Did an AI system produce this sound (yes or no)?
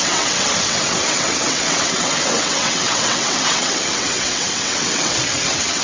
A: yes